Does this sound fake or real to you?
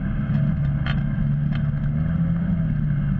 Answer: real